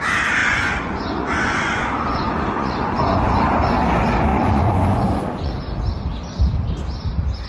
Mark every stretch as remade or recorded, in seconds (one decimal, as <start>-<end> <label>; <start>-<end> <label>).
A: 0.0-0.4 recorded; 0.4-3.4 remade; 3.4-4.3 recorded; 4.3-5.5 remade; 5.5-7.5 recorded